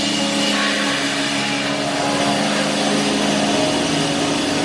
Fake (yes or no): no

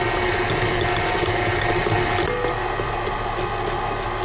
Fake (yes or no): no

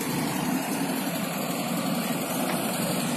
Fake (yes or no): yes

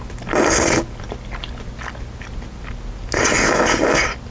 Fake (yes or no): no